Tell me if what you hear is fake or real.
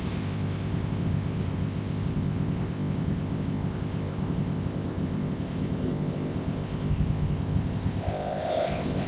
fake